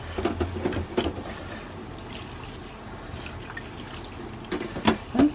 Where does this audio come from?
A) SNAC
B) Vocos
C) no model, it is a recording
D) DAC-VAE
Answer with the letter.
C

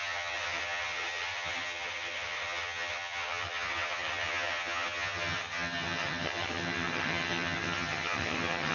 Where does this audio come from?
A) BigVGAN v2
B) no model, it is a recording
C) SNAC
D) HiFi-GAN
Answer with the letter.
D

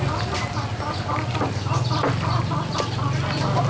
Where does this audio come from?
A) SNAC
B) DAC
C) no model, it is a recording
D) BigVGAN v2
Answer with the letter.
C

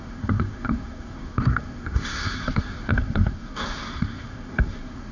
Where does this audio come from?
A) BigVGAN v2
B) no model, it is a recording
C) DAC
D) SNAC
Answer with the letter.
D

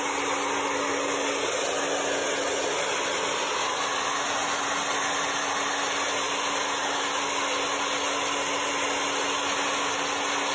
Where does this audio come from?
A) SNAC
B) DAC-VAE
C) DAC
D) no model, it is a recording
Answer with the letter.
D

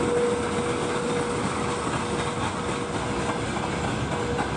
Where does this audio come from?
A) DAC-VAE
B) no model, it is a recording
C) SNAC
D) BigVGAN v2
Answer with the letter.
B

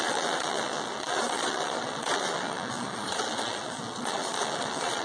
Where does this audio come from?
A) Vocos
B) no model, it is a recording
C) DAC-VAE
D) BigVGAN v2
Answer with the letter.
A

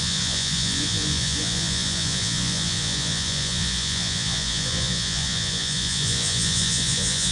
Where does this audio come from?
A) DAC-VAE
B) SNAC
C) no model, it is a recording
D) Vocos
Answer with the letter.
D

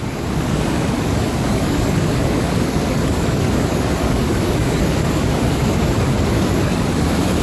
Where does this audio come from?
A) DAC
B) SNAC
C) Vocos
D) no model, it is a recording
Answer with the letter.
A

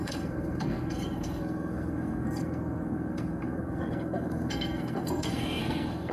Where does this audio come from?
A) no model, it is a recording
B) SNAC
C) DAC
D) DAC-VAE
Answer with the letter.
B